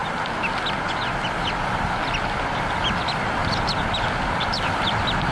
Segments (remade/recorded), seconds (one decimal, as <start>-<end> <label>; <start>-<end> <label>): 0.0-2.0 recorded; 2.0-3.4 remade; 3.4-4.0 recorded; 4.0-5.3 remade